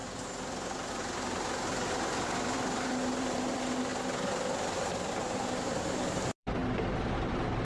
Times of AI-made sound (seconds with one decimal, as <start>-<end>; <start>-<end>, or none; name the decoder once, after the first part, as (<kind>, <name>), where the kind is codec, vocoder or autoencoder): 0.0-6.6 (vocoder, BigVGAN v2); 7.1-7.6